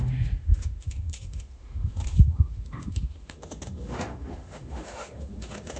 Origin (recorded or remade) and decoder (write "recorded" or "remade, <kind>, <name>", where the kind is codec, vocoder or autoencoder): remade, autoencoder, DAC-VAE